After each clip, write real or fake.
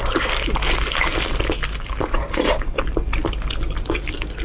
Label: real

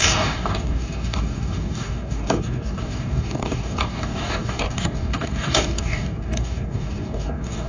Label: fake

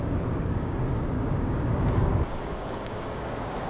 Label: fake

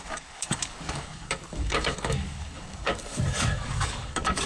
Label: fake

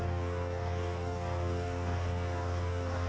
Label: fake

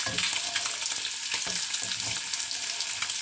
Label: real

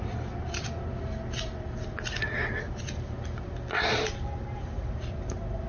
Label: real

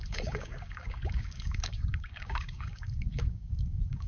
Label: fake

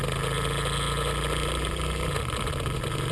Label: real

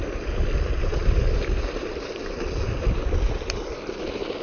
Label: real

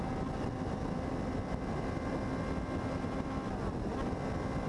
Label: real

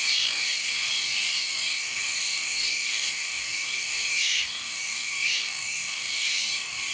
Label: fake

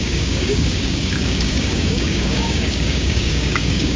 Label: fake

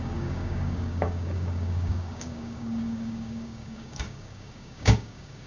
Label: fake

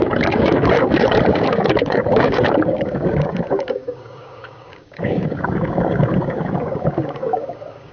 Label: fake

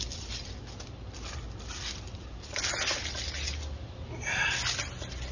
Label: real